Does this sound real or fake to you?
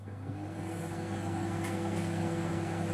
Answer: fake